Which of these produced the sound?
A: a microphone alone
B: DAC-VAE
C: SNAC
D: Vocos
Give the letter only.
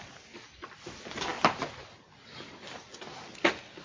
A